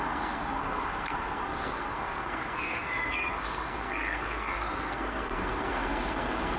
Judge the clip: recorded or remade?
remade